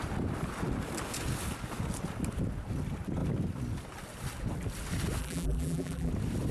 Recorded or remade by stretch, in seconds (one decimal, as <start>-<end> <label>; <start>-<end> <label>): 0.0-5.2 recorded; 5.2-6.1 remade; 6.1-6.5 recorded